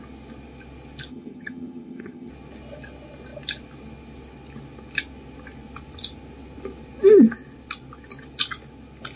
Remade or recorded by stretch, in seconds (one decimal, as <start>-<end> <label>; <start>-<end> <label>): 0.0-1.1 recorded; 1.1-2.3 remade; 2.3-9.2 recorded